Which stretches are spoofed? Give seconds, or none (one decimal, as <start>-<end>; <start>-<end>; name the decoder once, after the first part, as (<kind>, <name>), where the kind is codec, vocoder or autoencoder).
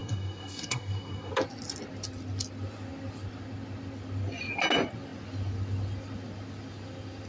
0.0-1.3 (codec, SNAC)